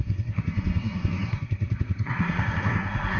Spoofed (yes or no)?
yes